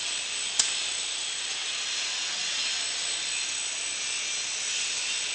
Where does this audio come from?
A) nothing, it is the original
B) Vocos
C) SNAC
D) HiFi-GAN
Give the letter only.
A